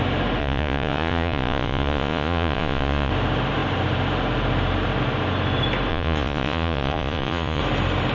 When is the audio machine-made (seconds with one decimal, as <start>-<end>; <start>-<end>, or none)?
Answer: 0.4-3.1; 5.9-7.6